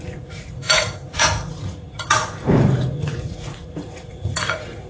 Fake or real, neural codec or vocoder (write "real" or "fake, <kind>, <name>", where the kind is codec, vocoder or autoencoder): fake, vocoder, Vocos